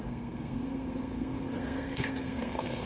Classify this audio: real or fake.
fake